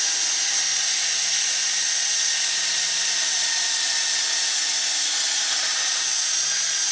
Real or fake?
fake